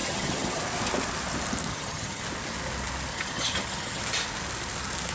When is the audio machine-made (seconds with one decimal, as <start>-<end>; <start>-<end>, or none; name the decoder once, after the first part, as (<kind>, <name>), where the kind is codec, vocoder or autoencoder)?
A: 0.0-0.6 (vocoder, HiFi-GAN); 1.7-2.2; 3.1-4.0